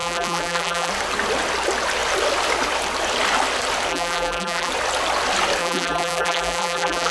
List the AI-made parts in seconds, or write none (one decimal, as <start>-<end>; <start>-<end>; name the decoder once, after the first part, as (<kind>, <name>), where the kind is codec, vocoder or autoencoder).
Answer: 0.0-0.9 (vocoder, BigVGAN v2); 3.9-4.7; 5.6-7.1